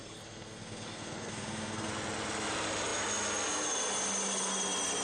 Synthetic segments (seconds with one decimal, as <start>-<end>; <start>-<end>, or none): 0.0-1.9